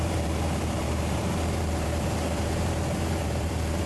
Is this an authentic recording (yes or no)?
no